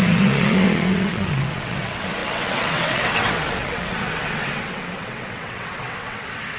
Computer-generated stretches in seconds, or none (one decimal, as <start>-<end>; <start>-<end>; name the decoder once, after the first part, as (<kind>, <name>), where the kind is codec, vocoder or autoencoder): 0.0-6.6 (vocoder, WaveNeXt)